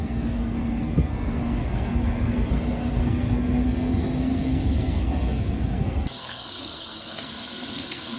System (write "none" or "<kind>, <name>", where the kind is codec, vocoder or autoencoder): codec, SNAC